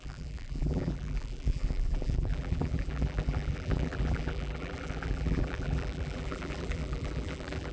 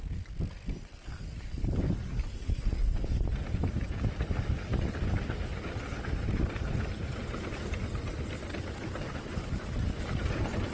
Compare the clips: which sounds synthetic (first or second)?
first